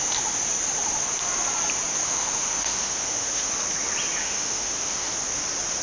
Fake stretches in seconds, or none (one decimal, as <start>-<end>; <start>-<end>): 2.0-3.5; 4.2-5.1

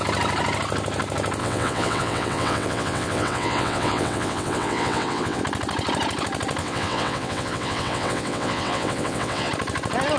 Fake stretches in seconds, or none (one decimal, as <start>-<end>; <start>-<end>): 1.4-5.4; 6.6-9.5

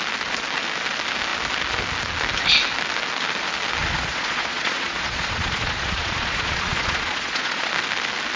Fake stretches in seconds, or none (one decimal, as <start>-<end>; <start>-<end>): 3.8-7.7

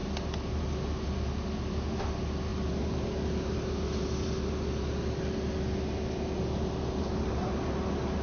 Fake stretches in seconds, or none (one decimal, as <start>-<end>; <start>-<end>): 0.0-0.6